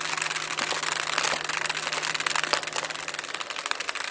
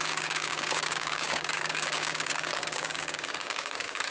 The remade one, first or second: second